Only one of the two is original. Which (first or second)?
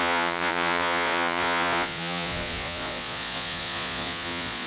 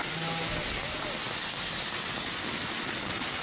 second